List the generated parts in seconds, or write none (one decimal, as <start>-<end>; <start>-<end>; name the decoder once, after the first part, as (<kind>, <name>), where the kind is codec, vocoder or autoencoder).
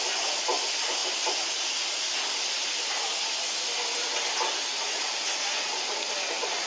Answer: none